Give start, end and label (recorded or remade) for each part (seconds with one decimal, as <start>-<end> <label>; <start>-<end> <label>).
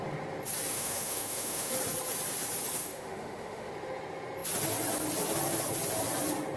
0.0-0.7 recorded; 0.7-1.7 remade; 1.7-2.8 recorded; 2.8-3.7 remade; 3.7-6.6 recorded